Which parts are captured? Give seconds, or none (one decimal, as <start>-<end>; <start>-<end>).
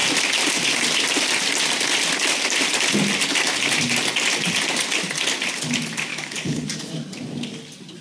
0.0-6.1; 6.9-8.0